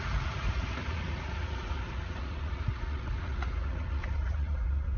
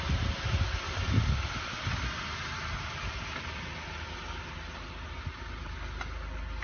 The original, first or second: second